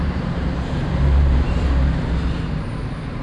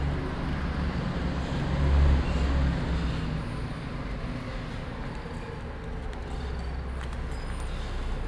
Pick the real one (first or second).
second